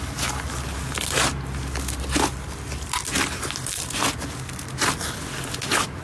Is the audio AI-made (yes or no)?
no